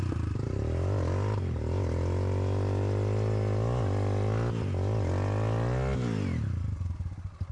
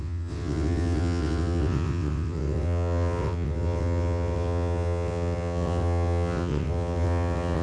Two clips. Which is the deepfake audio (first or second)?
second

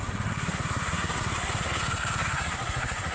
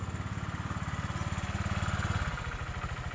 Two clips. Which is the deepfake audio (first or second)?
first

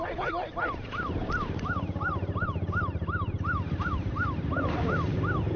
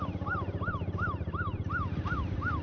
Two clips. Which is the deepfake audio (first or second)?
first